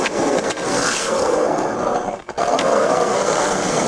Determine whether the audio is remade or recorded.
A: remade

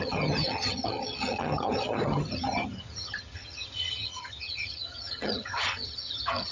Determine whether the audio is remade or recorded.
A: remade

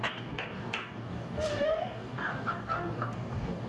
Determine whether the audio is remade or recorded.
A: remade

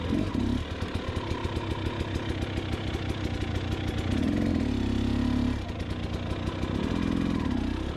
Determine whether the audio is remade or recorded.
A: recorded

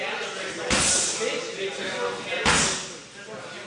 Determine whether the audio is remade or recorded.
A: recorded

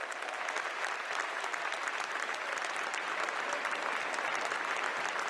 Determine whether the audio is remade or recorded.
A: recorded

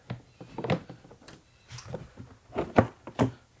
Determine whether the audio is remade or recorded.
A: recorded